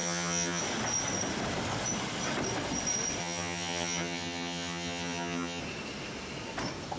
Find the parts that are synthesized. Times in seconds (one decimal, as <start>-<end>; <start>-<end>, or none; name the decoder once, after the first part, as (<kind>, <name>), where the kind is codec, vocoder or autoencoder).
0.0-0.6 (vocoder, HiFi-GAN); 3.2-5.6